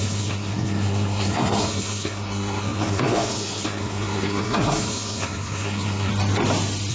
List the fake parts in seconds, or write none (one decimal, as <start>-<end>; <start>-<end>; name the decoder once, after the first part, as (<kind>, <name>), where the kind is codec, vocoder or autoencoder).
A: 0.0-6.1 (codec, SNAC)